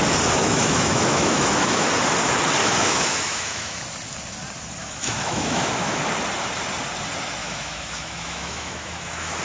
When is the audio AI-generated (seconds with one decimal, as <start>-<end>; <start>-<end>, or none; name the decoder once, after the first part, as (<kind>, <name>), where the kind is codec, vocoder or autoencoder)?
0.4-1.9 (autoencoder, DAC-VAE); 2.6-3.8; 4.8-6.0; 7.4-9.4